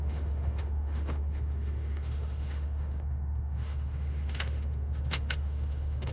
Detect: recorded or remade remade